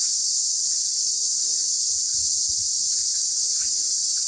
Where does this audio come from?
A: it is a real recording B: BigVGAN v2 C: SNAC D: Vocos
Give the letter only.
A